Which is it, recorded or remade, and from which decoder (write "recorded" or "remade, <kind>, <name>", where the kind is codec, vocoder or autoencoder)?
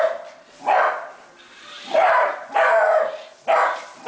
recorded